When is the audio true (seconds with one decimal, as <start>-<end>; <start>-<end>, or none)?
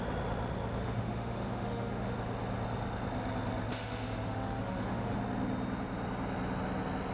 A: 0.0-0.8; 2.1-3.7; 5.2-7.1